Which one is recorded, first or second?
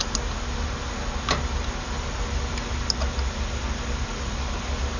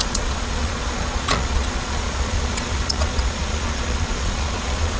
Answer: first